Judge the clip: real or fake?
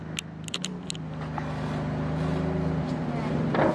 real